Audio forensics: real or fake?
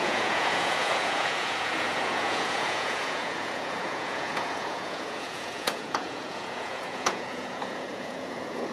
fake